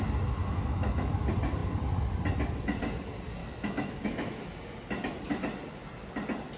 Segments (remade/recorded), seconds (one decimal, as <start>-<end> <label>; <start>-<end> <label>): 0.0-0.4 recorded; 0.4-1.1 remade; 1.1-3.4 recorded; 3.4-4.4 remade; 4.4-6.6 recorded